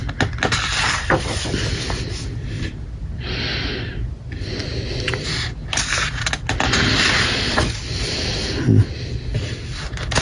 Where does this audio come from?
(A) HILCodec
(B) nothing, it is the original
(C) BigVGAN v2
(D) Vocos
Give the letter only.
B